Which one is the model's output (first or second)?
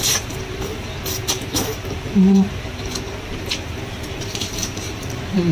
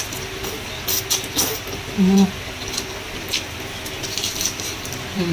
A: first